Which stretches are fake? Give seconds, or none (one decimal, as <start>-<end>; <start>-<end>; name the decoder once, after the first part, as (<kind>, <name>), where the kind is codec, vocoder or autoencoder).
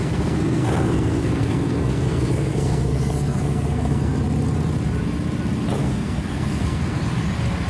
0.0-4.1 (codec, SNAC); 5.8-7.0